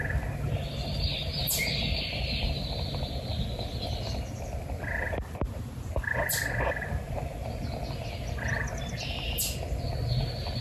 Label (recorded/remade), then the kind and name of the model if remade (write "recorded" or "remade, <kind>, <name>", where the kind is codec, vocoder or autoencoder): recorded